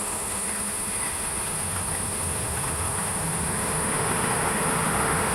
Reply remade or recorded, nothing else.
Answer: remade